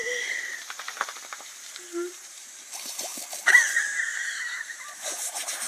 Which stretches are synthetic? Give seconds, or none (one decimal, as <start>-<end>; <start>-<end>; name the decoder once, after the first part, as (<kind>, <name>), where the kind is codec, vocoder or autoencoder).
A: 0.0-3.1 (vocoder, BigVGAN v2); 4.1-5.7